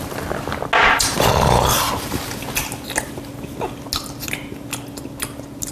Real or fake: real